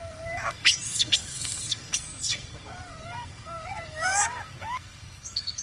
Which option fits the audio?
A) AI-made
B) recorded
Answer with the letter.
A